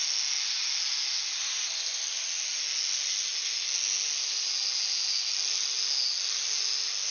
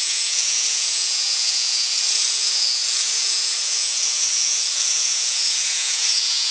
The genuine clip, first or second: first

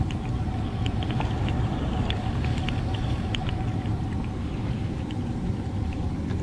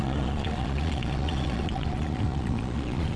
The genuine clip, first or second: first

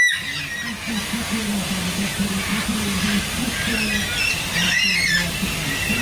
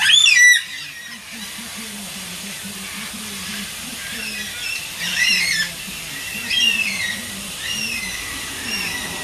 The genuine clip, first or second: first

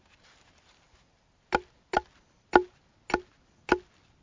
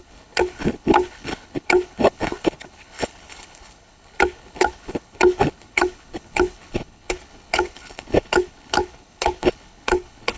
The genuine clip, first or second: first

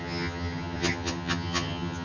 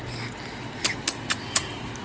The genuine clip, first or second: second